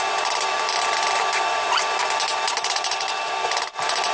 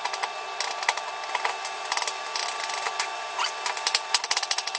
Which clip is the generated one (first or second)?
first